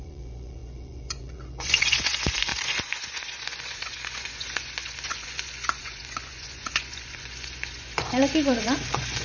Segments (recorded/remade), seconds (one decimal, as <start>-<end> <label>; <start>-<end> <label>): 0.0-9.2 remade